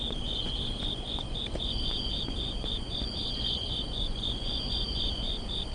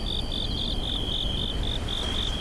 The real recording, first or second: second